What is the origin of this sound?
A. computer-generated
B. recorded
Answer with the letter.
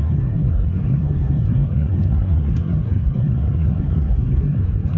A